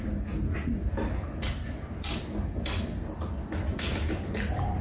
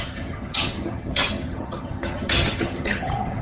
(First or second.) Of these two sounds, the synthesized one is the second